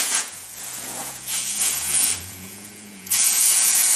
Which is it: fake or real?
fake